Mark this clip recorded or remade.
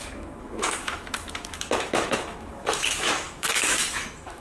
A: remade